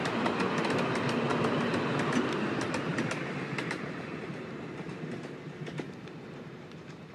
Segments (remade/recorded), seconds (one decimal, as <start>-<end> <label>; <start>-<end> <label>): 0.0-7.1 recorded